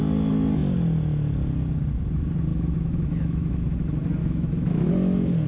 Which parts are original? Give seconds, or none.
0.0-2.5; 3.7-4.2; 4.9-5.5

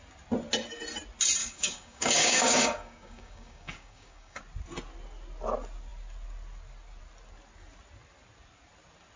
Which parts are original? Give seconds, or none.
0.0-1.4; 4.4-9.2

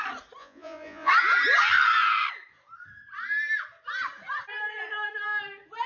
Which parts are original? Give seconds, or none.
0.0-0.4; 1.1-5.9

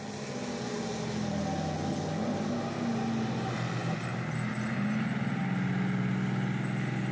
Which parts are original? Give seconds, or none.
0.0-7.1